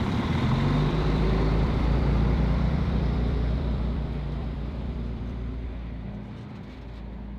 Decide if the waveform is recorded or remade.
remade